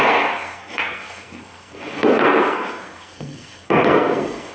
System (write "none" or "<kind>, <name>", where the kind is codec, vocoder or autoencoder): codec, SNAC